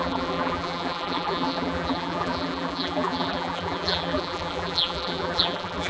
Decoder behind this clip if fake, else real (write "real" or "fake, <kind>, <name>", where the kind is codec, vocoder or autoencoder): fake, vocoder, BigVGAN v2